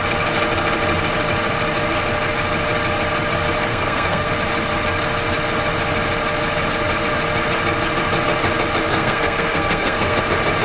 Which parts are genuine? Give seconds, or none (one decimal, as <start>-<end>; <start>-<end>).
0.0-3.7; 4.3-8.9; 10.2-10.6